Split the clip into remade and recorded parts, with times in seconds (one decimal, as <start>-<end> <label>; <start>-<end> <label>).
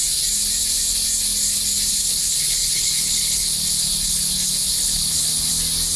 0.0-1.9 recorded; 1.9-5.5 remade; 5.5-6.0 recorded